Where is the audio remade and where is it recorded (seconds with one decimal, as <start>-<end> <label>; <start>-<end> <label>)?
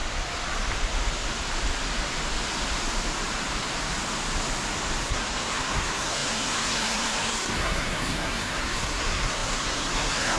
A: 0.0-5.0 recorded; 5.0-10.4 remade